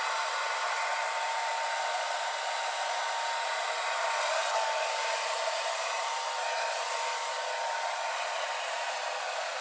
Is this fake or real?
real